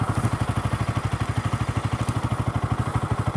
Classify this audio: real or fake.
real